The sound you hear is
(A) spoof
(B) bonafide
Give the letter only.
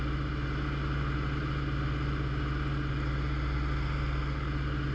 B